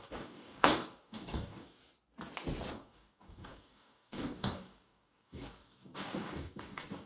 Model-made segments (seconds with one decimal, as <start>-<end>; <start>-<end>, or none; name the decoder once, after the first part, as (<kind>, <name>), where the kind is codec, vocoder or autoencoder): 0.0-1.8 (codec, DAC); 2.7-7.1